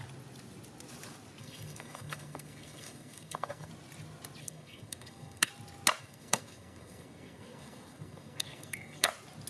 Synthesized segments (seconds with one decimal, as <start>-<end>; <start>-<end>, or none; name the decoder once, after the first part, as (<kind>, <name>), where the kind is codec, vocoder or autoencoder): 1.4-3.7 (codec, SNAC); 4.4-5.5; 6.0-9.1